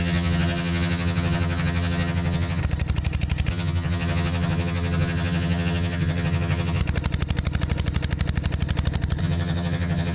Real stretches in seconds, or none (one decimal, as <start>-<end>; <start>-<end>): 2.6-3.5; 6.8-9.2